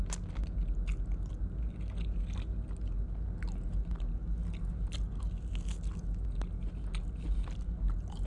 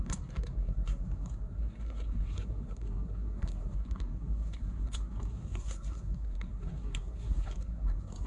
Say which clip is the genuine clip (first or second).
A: first